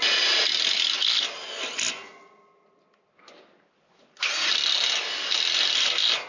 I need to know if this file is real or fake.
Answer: real